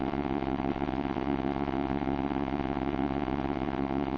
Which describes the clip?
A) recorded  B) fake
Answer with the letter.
B